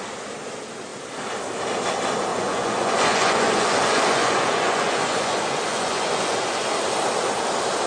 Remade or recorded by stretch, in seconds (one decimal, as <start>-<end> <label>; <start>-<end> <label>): 0.0-2.3 recorded; 2.3-6.8 remade; 6.8-7.9 recorded